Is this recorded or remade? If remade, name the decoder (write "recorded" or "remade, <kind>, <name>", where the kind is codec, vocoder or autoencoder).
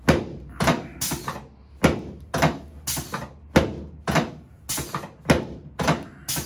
recorded